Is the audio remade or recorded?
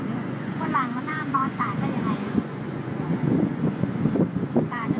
remade